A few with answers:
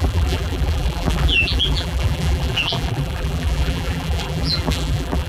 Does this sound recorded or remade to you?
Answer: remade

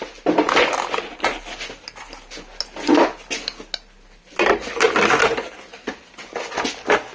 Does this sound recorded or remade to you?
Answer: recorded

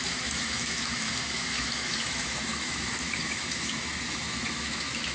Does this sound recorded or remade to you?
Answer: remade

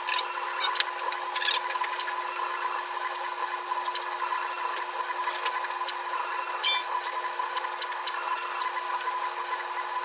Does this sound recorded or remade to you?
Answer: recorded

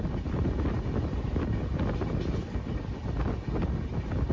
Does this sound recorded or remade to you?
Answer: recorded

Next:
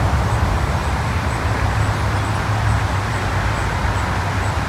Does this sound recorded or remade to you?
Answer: recorded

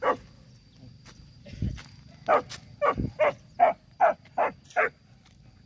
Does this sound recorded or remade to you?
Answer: recorded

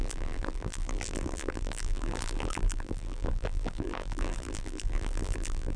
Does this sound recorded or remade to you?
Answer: remade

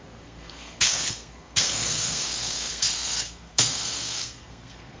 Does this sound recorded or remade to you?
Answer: remade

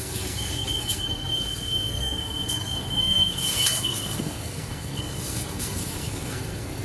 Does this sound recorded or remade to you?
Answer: remade